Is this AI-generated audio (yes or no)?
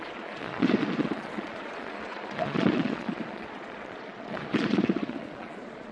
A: yes